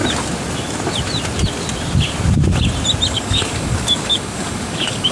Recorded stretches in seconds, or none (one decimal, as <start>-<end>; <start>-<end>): 0.0-3.1

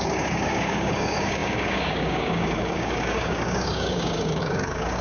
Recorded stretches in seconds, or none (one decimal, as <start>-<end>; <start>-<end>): none

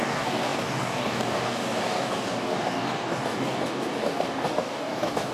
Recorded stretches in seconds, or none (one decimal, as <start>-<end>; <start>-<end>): none

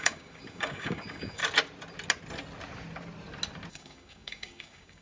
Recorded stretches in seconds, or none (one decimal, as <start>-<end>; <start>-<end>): 1.4-3.7

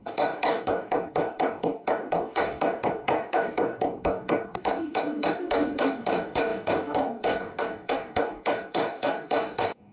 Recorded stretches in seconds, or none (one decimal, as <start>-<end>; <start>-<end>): none

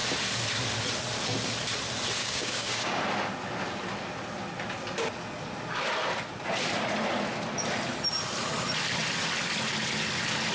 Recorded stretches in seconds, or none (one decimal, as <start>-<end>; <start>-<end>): 0.0-2.2; 3.0-10.5

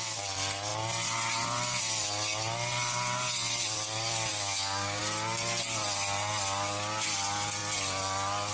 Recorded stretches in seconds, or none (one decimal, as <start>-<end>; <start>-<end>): 0.0-4.3; 5.0-8.5

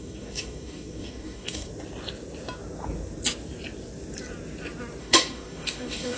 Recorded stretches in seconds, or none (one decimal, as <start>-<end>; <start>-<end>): 1.7-5.0